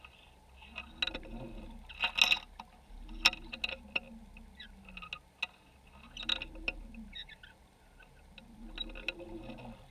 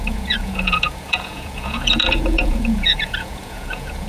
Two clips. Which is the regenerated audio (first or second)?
second